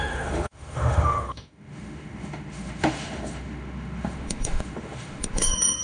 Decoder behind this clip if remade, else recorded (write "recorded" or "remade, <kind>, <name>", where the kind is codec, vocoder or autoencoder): remade, autoencoder, DAC-VAE